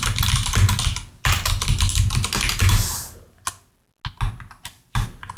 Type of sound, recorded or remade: recorded